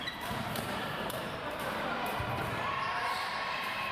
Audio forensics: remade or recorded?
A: remade